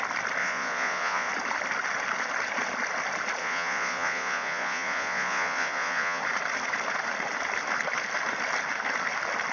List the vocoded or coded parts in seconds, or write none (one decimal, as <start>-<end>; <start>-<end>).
0.4-1.3; 3.4-6.2